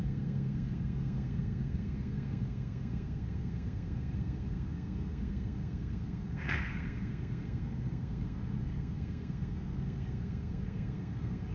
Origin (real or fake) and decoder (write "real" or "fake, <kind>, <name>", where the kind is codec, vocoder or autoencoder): fake, codec, SNAC